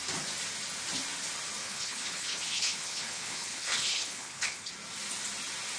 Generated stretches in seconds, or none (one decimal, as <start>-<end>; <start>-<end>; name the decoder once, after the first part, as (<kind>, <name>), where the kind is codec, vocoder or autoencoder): 1.6-4.7 (codec, HILCodec)